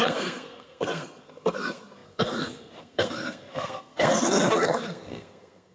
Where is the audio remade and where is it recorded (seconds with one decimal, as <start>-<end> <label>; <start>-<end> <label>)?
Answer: 0.0-5.7 remade